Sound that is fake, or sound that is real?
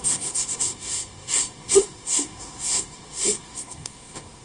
fake